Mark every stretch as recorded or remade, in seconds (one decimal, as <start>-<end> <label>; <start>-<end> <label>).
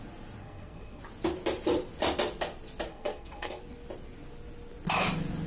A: 0.0-0.4 recorded; 0.4-1.0 remade; 1.0-2.9 recorded; 2.9-3.6 remade; 3.6-5.5 recorded